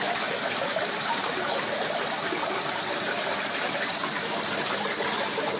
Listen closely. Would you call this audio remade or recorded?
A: recorded